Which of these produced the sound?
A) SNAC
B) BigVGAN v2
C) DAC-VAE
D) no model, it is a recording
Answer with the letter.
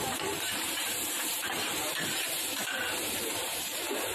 B